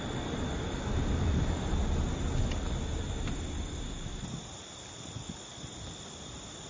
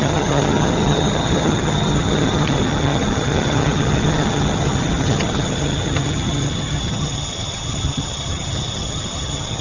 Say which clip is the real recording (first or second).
first